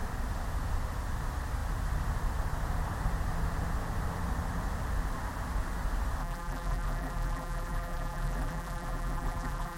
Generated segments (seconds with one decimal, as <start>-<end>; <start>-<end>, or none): 6.2-9.8